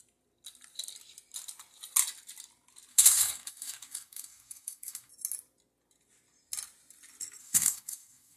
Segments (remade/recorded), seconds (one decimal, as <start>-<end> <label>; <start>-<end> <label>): 0.0-2.9 recorded; 2.9-5.1 remade; 5.1-7.4 recorded; 7.4-8.4 remade